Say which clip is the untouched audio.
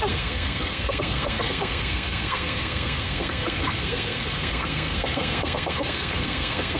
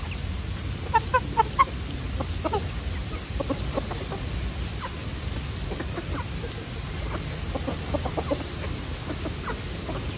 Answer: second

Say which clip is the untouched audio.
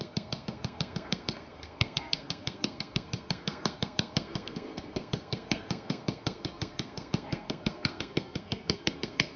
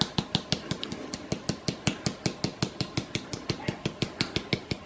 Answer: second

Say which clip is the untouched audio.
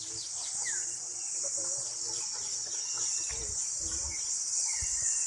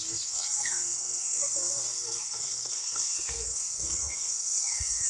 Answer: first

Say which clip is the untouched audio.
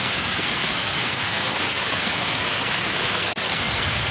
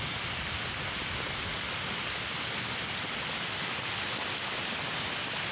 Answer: second